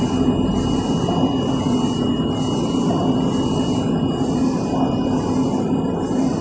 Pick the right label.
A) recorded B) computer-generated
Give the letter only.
A